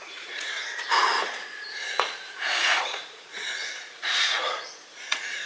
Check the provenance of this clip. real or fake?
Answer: fake